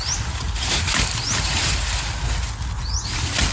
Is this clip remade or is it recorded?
recorded